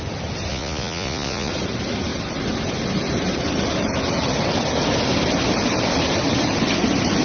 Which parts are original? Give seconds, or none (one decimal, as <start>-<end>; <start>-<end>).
0.0-0.5; 1.5-7.2